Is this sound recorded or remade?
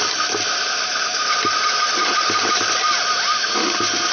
recorded